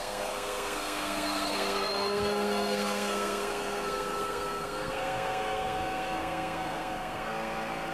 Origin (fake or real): fake